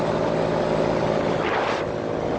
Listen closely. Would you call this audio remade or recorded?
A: recorded